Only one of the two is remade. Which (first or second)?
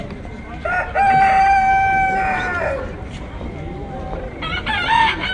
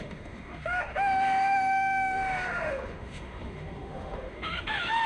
second